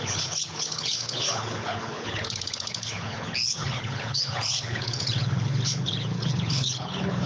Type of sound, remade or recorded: remade